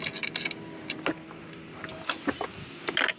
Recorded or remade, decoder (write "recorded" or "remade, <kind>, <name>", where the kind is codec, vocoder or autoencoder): recorded